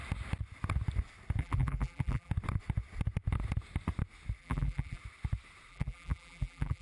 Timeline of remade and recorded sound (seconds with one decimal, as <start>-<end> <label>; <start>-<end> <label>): 0.0-1.4 recorded; 1.4-2.3 remade; 2.3-4.4 recorded; 4.4-5.0 remade; 5.0-5.7 recorded; 5.7-6.8 remade